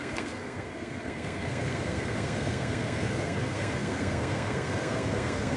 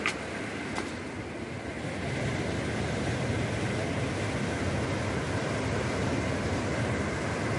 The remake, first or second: first